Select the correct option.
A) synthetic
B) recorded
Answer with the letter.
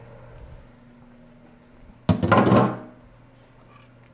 B